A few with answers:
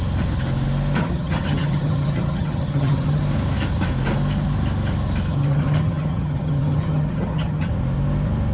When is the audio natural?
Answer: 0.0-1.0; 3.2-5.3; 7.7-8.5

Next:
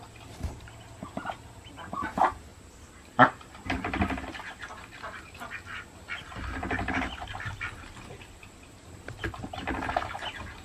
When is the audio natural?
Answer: 0.0-10.6

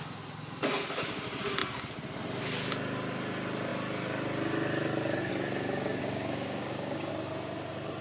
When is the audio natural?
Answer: 0.0-6.0; 7.1-8.0

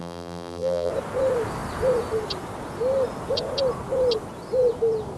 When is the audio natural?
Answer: 0.9-5.2

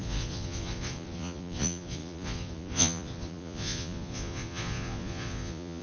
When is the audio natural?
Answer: none